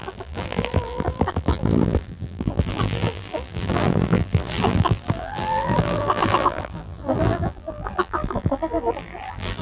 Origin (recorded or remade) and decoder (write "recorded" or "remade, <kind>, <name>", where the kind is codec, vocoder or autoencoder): remade, vocoder, BigVGAN v2